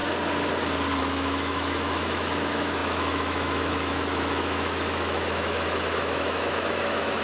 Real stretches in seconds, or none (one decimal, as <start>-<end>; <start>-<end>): 0.0-1.0